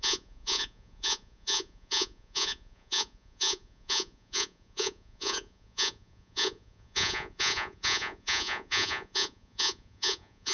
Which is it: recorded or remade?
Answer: remade